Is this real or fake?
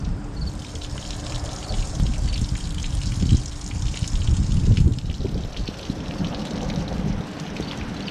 fake